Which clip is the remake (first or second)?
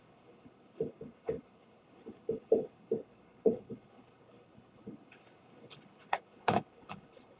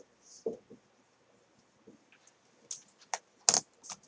first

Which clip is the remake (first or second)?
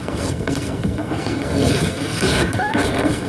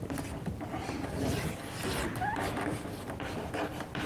first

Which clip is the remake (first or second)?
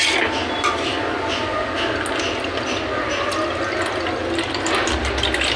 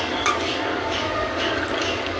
second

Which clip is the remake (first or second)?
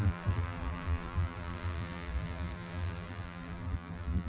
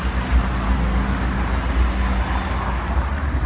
first